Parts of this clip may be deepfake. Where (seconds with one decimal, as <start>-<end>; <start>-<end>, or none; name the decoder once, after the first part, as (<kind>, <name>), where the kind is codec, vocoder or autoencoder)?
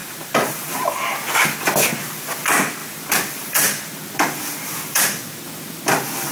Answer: 0.0-2.4 (vocoder, BigVGAN v2); 2.8-6.3